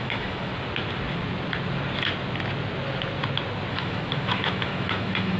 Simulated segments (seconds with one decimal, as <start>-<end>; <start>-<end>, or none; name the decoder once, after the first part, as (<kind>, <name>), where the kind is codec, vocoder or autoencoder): 0.0-0.5 (autoencoder, DAC-VAE); 3.7-5.4